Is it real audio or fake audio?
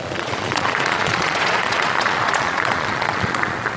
fake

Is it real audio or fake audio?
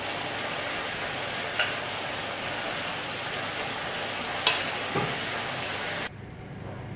real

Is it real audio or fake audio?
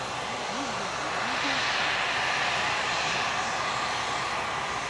real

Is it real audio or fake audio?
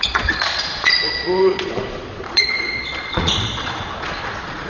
fake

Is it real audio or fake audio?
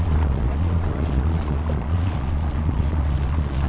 fake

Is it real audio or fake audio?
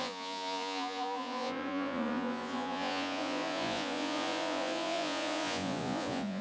fake